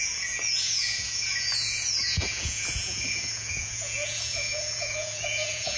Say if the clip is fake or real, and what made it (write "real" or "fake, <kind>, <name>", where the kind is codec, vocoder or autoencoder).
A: fake, vocoder, Vocos